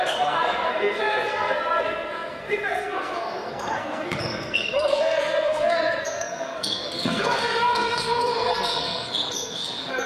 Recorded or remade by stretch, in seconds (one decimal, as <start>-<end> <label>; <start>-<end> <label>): 0.0-10.1 remade